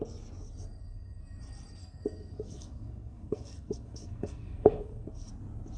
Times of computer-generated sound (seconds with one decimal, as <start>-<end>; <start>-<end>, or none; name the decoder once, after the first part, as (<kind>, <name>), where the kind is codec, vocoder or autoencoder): 0.8-1.4 (codec, SNAC); 1.8-5.3